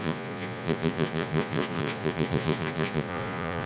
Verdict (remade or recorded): remade